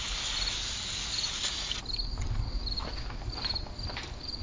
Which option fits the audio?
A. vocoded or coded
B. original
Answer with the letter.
B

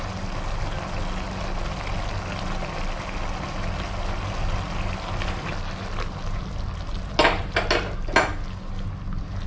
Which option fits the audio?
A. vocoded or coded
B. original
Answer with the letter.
B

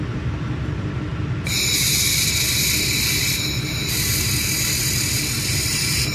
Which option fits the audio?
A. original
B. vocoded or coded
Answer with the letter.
A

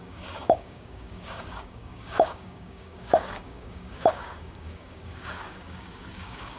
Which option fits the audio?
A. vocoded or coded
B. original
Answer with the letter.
A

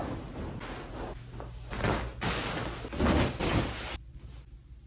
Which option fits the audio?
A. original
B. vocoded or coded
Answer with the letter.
A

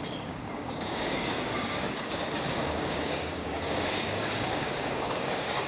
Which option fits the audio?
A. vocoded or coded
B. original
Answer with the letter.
A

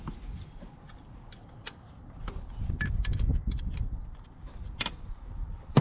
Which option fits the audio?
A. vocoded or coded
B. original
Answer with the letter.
B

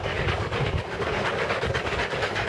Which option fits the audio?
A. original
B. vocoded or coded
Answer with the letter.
B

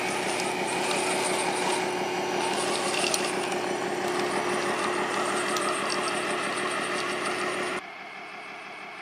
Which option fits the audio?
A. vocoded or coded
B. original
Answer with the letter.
B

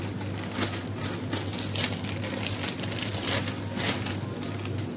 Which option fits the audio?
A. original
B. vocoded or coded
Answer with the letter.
A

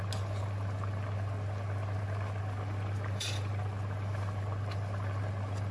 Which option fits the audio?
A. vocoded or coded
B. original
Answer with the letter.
B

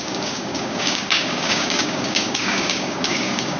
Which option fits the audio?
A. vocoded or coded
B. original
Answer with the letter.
A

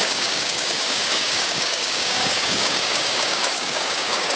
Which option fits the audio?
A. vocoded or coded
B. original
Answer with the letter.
A